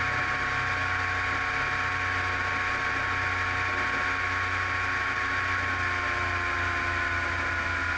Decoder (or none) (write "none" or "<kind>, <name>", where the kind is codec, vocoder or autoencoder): none